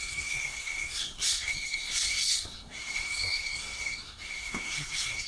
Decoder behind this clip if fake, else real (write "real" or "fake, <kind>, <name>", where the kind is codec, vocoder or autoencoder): fake, codec, SNAC